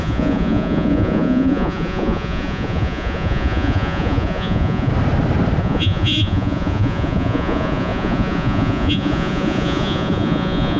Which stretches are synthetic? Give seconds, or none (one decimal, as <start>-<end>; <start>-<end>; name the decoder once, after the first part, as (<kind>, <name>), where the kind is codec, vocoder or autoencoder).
0.0-4.9 (vocoder, Vocos); 5.6-10.8